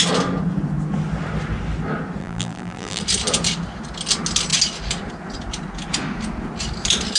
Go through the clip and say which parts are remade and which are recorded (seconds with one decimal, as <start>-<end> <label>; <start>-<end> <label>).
0.0-2.2 recorded; 2.2-3.0 remade; 3.0-7.2 recorded